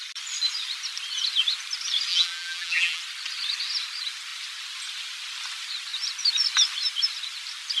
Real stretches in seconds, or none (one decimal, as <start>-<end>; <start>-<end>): 0.0-2.1; 3.0-7.8